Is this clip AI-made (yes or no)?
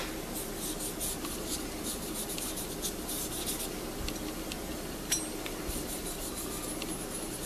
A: no